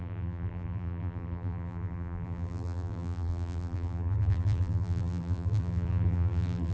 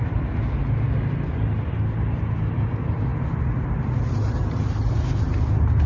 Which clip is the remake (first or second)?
first